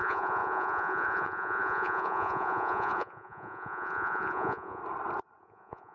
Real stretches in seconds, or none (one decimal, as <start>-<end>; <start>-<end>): 4.8-5.4